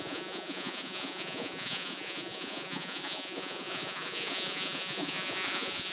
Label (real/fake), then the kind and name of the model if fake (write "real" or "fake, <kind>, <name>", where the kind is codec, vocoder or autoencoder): fake, vocoder, Vocos